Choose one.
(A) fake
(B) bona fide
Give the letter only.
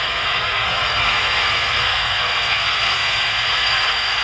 A